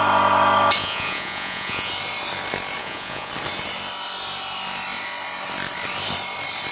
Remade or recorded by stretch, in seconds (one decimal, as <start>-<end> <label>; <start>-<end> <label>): 0.0-0.8 recorded; 0.8-1.9 remade; 1.9-2.8 recorded; 2.8-3.3 remade; 3.3-6.7 recorded